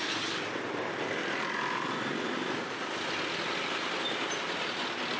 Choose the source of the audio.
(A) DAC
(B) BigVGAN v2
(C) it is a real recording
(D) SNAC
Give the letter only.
C